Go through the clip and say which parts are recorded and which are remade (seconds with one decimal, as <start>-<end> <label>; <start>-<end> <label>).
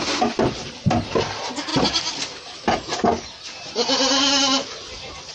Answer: 0.0-5.3 recorded